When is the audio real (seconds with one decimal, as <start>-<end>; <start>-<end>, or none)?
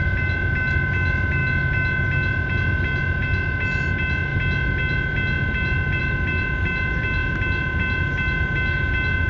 0.0-9.3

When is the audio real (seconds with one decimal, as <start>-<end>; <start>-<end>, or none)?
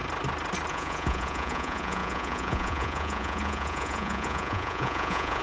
0.0-0.7